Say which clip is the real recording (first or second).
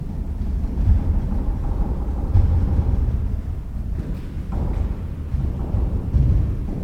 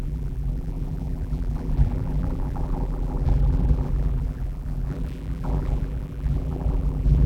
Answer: first